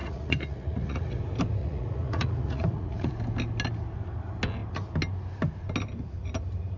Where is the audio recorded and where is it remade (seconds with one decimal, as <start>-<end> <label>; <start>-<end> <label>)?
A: 0.0-1.2 remade; 1.2-1.6 recorded; 1.6-3.1 remade; 3.1-6.8 recorded